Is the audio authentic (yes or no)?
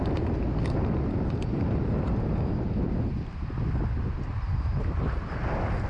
yes